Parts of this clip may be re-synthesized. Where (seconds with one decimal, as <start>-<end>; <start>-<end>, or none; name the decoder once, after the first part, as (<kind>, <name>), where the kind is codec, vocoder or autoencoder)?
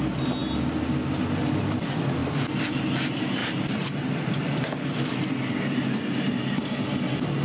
3.4-5.2 (vocoder, BigVGAN v2)